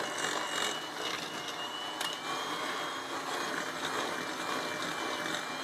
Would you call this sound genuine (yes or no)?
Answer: yes